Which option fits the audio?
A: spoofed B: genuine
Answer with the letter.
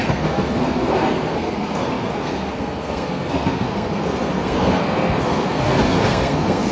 A